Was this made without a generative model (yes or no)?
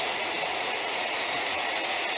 no